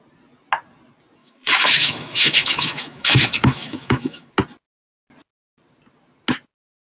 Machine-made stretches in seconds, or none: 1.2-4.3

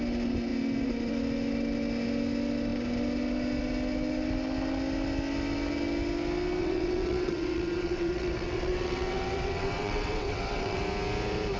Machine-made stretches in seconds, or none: 6.6-10.8

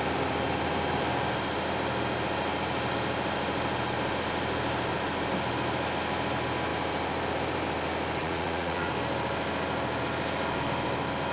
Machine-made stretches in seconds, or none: 8.2-8.9

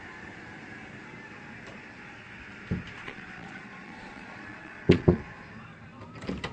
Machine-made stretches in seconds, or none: 3.0-5.2

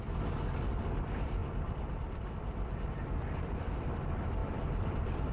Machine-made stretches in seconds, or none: 1.4-3.7; 4.4-5.3